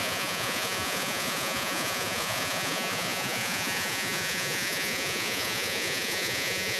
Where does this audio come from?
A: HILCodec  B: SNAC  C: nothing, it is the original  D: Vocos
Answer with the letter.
D